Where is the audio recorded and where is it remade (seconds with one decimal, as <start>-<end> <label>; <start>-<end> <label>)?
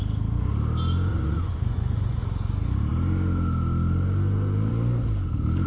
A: 0.0-1.1 recorded; 1.1-2.2 remade; 2.2-5.7 recorded